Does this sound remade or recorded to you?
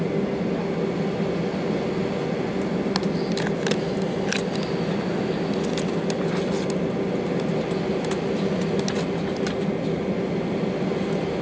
recorded